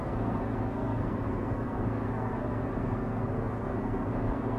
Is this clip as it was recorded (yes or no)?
no